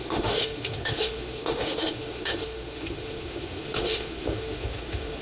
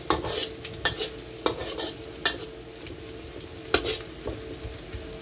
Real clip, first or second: second